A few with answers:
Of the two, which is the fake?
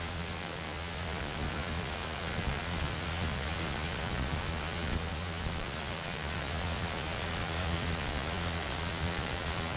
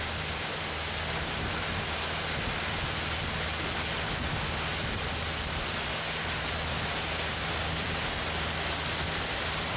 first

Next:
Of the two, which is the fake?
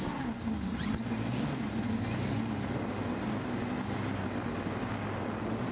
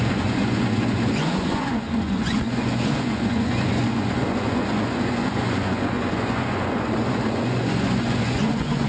second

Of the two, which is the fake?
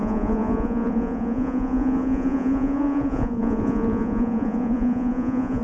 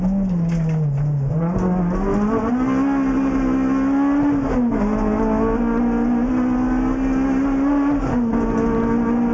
first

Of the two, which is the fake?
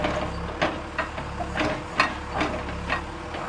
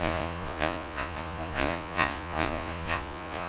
second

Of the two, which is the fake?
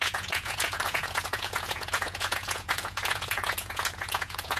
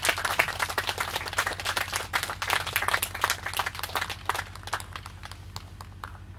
first